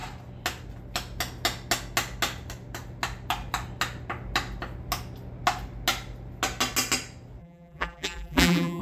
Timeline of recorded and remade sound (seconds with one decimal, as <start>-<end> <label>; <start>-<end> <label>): 0.0-7.4 recorded; 7.4-8.8 remade